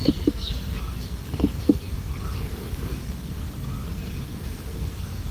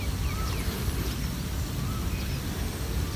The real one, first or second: second